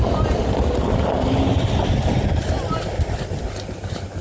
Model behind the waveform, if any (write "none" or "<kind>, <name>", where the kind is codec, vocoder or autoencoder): none